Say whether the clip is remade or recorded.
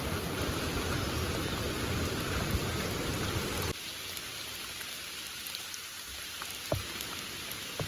recorded